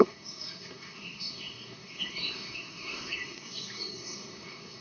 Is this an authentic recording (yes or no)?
no